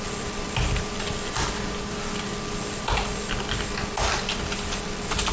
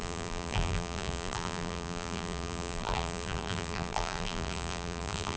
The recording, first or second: first